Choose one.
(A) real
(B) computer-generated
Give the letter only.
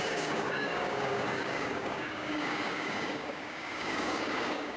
B